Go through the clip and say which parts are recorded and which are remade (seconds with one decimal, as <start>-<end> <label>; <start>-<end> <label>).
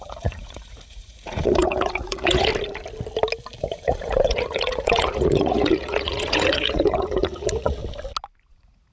0.0-2.5 remade; 2.5-3.6 recorded; 3.6-7.8 remade; 7.8-8.5 recorded; 8.5-8.9 remade